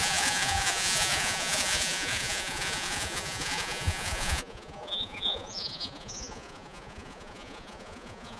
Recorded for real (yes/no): no